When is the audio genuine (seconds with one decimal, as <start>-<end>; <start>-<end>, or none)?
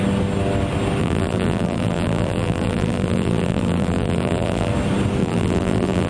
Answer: 0.0-1.0; 4.7-5.2